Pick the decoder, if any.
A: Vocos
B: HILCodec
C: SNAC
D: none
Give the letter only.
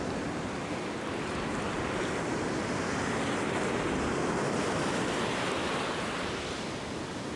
D